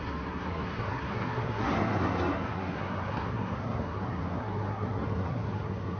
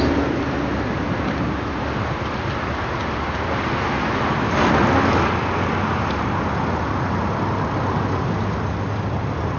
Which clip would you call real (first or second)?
second